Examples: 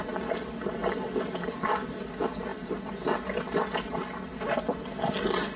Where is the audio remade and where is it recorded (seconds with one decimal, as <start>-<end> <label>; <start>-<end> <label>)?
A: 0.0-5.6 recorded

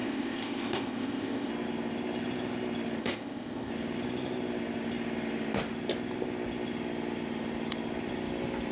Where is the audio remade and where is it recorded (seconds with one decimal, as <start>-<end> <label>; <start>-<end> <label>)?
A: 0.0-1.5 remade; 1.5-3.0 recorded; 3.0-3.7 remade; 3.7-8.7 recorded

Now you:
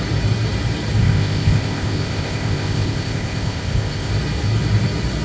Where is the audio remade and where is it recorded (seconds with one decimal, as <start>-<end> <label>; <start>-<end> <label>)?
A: 0.0-1.0 recorded; 1.0-4.1 remade; 4.1-5.2 recorded

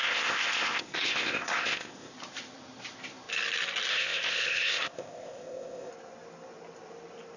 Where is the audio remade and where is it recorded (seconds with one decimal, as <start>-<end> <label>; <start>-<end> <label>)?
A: 0.0-2.1 remade; 2.1-3.9 recorded; 3.9-5.9 remade; 5.9-7.4 recorded

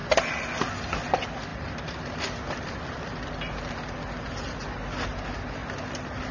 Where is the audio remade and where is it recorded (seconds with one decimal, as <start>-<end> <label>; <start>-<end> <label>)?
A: 0.0-6.3 recorded

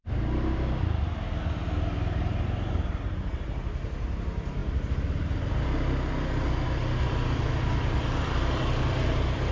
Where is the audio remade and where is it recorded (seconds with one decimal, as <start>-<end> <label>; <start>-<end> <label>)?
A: 0.0-9.5 recorded